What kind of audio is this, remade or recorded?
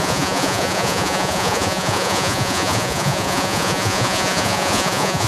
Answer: remade